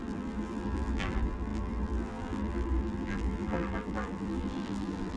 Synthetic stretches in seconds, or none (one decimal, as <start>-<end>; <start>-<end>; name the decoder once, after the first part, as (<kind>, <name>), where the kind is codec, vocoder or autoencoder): 0.0-5.2 (vocoder, BigVGAN v2)